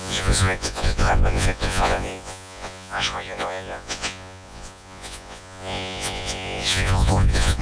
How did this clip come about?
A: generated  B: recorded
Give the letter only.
A